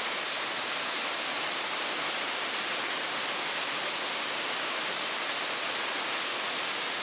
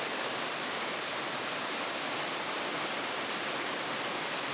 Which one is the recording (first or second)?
first